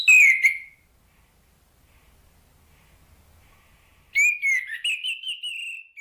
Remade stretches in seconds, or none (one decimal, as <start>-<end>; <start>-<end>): none